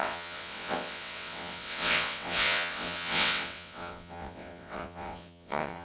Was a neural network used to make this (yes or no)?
yes